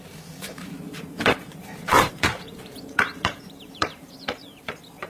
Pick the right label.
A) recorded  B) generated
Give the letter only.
B